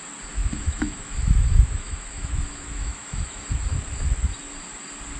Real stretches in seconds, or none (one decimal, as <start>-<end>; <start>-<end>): 0.0-0.4; 3.5-5.2